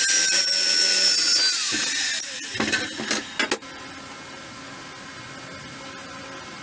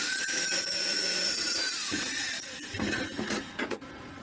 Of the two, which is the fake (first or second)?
second